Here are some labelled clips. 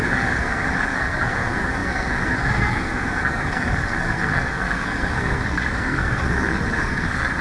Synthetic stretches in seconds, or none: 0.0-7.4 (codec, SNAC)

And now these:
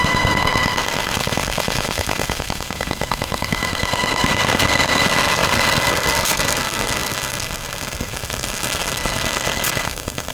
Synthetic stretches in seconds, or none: 0.0-10.3 (codec, SNAC)

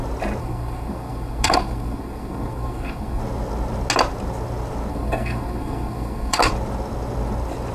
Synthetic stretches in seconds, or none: 0.4-3.2 (codec, SNAC); 4.9-6.5

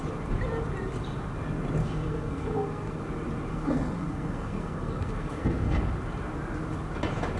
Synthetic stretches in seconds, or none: 1.8-3.0 (codec, SNAC); 3.5-5.8

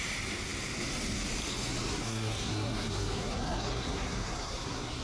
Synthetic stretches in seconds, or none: 1.9-5.0 (codec, SNAC)

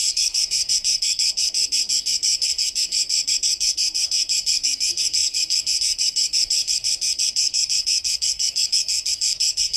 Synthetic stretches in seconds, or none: 0.0-9.8 (codec, SNAC)

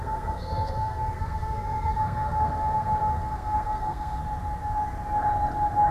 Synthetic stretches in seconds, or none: 0.0-4.2 (codec, SNAC)